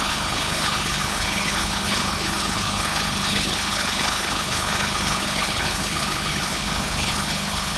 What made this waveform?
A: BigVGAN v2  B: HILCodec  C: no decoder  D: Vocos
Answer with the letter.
B